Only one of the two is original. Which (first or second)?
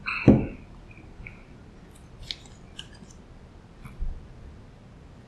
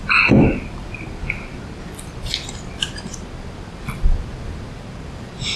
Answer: first